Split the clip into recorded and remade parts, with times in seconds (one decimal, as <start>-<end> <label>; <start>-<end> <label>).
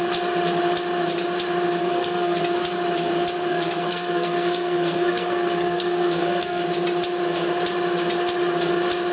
0.0-1.8 recorded; 1.8-2.4 remade; 2.4-3.5 recorded; 3.5-6.6 remade; 6.6-9.1 recorded